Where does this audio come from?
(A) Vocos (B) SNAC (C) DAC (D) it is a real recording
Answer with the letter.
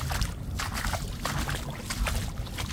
D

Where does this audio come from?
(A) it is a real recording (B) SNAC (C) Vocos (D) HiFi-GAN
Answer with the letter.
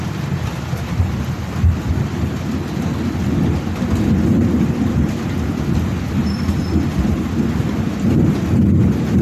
A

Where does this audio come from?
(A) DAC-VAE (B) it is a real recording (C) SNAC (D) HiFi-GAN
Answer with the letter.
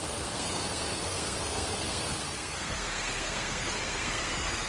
C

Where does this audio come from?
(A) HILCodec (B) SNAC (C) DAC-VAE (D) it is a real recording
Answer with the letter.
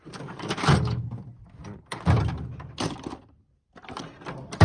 D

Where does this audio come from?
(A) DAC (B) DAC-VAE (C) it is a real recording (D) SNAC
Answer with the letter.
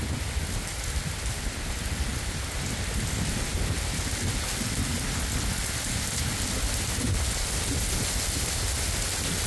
C